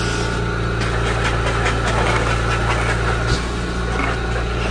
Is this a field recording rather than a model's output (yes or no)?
yes